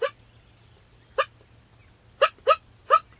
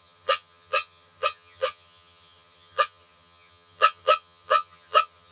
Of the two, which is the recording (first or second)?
first